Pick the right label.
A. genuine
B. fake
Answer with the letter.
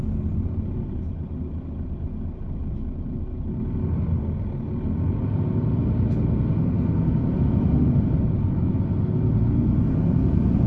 A